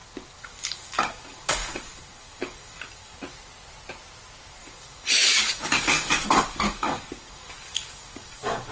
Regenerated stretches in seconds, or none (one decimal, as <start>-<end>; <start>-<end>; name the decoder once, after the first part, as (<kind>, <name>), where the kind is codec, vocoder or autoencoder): 0.0-3.2 (codec, DAC); 4.6-8.7